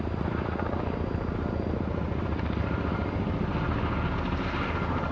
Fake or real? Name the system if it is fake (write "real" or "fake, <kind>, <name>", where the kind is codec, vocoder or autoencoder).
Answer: real